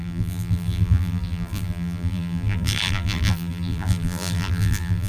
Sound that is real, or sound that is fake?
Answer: fake